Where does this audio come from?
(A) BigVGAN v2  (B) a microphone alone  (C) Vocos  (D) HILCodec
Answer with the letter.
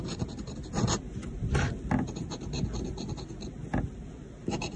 B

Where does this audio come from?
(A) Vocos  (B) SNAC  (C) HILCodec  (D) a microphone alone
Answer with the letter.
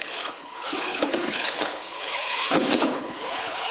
C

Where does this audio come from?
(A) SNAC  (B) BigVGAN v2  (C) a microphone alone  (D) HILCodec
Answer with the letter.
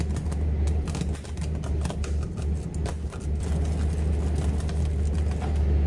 C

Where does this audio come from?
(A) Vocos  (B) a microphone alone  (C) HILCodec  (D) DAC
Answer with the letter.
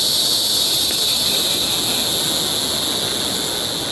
B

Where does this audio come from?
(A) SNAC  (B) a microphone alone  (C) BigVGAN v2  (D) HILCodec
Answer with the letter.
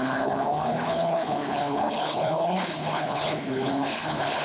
D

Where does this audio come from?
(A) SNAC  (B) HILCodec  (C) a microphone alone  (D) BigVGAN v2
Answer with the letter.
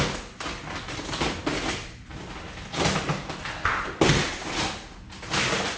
C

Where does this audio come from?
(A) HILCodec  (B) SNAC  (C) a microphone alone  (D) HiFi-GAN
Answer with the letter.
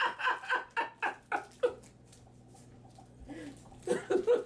C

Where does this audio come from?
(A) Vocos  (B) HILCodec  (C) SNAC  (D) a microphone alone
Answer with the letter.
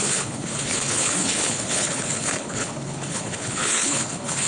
B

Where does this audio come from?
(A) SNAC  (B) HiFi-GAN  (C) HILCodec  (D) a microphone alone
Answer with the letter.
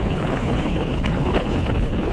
C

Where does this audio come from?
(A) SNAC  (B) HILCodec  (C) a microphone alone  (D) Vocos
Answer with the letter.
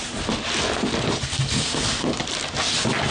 C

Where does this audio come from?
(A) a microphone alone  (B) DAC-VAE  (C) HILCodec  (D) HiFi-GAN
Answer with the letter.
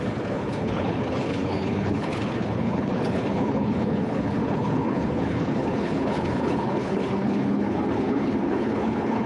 C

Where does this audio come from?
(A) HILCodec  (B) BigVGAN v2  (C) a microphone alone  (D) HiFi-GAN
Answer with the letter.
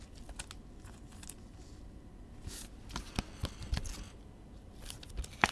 C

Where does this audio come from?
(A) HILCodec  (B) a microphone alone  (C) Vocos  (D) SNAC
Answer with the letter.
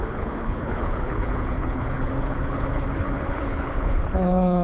A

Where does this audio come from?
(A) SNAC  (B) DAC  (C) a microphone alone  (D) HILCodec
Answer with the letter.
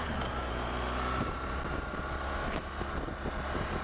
C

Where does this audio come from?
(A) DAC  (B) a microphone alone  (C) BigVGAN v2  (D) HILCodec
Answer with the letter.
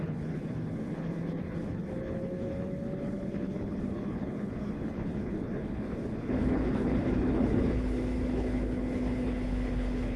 D